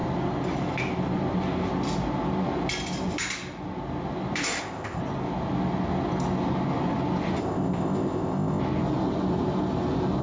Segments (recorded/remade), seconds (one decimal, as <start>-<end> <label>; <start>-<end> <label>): 0.0-4.6 recorded; 4.6-5.0 remade; 5.0-7.4 recorded; 7.4-8.6 remade; 8.6-10.2 recorded